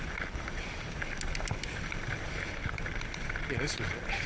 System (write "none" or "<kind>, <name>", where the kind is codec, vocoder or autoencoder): none